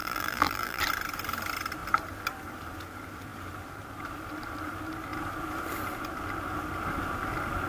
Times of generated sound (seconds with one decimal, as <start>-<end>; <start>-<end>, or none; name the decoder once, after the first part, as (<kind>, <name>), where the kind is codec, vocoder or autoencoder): 0.0-0.8 (vocoder, BigVGAN v2)